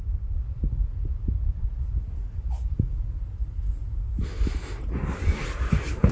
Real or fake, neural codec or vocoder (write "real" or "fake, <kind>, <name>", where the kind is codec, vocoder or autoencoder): real